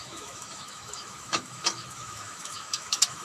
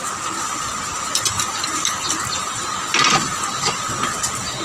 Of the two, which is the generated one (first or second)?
first